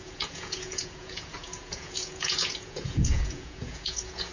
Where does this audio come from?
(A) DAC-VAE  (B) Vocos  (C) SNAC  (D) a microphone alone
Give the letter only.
B